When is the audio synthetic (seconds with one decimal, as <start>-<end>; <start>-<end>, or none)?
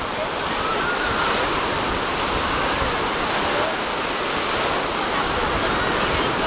none